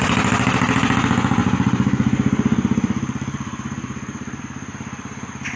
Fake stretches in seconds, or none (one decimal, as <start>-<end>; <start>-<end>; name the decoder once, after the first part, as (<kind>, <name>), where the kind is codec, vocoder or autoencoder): 1.4-4.4 (vocoder, BigVGAN v2)